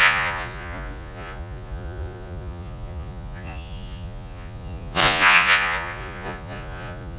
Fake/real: fake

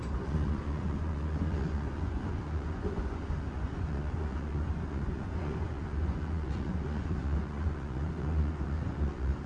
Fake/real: fake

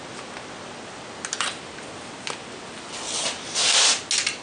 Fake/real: real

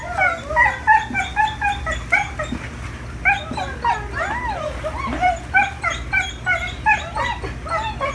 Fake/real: real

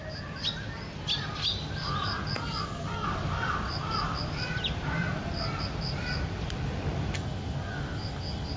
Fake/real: real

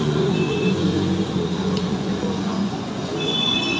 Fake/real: fake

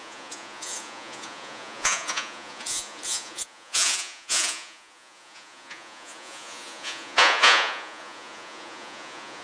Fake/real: fake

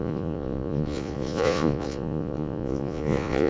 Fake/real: fake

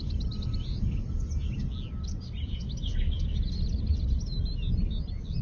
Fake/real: real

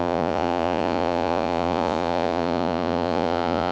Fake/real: fake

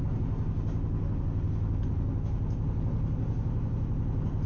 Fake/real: real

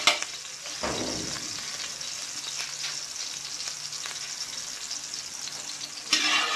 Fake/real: real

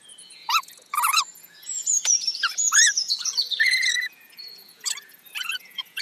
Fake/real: fake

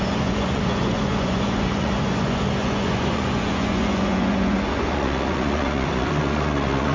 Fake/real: fake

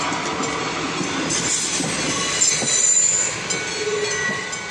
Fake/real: real